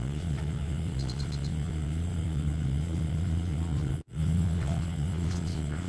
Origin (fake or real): fake